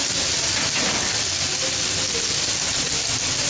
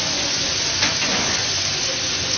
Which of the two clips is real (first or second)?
first